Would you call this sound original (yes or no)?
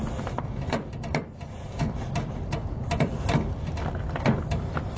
yes